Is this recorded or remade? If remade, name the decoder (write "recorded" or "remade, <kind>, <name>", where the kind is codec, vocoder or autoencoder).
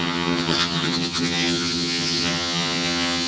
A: remade, vocoder, HiFi-GAN